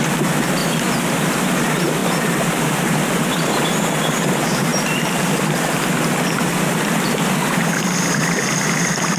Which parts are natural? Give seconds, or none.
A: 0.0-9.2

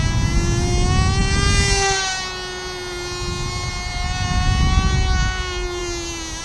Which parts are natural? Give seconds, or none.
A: 0.0-6.4

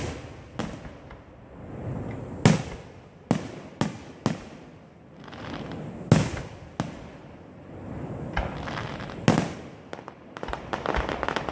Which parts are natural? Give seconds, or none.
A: 0.0-11.5

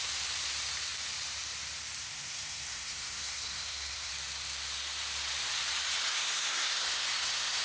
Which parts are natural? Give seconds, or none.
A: 0.0-2.0; 4.1-6.1

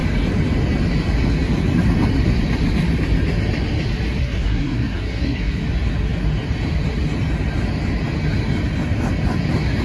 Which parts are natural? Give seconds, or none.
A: 0.0-4.2; 5.6-9.8

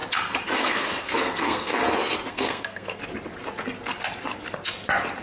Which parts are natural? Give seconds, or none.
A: 0.0-0.6; 1.7-2.3; 3.0-5.2

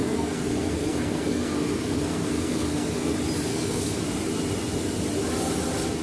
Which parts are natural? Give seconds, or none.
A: 3.1-3.5; 4.0-6.0